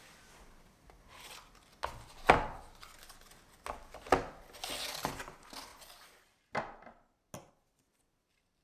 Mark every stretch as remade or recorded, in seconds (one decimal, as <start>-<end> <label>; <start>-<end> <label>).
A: 0.0-8.6 recorded